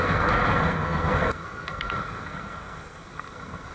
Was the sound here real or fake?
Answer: fake